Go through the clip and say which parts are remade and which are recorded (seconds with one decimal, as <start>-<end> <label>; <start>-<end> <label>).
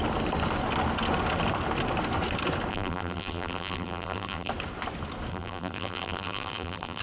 0.0-2.7 recorded; 2.7-4.5 remade; 4.5-5.3 recorded; 5.3-7.0 remade